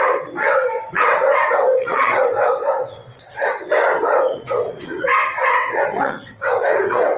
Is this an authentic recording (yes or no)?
no